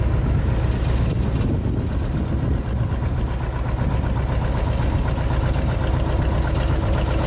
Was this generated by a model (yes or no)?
no